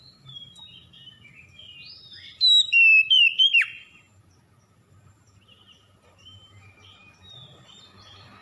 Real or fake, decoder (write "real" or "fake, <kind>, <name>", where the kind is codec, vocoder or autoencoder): fake, vocoder, BigVGAN v2